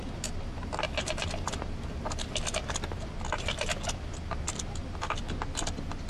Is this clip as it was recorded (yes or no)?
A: yes